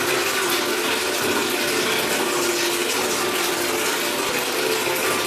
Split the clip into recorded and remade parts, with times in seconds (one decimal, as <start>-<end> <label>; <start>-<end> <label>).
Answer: 0.0-5.3 recorded